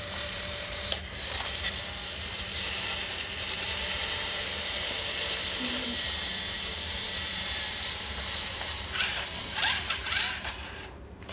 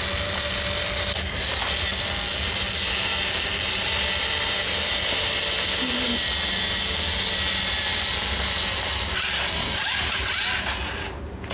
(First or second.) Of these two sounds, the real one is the second